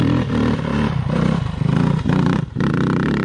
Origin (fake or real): real